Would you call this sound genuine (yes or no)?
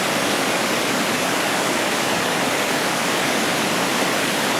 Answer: no